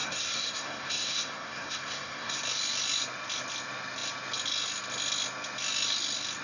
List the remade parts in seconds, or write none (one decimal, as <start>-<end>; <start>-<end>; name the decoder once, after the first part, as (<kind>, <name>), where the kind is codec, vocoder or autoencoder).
0.0-2.4 (codec, SNAC)